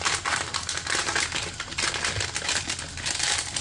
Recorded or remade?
recorded